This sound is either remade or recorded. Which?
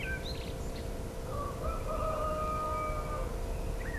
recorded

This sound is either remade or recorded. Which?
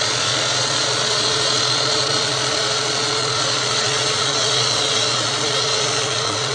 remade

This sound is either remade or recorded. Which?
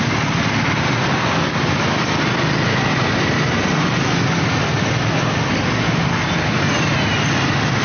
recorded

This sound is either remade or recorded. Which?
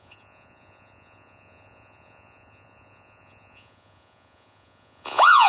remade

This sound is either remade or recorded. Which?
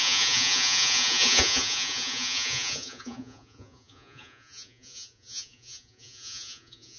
remade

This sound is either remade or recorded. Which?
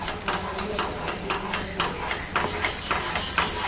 recorded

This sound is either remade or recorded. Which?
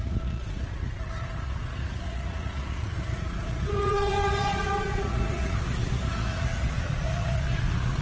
remade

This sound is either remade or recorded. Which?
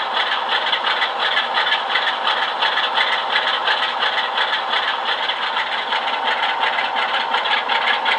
recorded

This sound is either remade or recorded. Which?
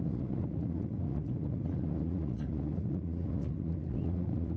remade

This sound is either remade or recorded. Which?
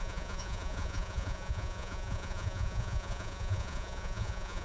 remade